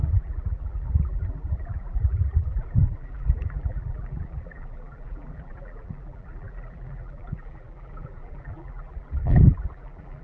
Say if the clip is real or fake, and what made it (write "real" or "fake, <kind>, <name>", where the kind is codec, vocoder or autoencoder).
fake, vocoder, BigVGAN v2